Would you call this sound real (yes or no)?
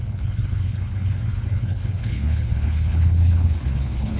no